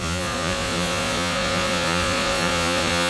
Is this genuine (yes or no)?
no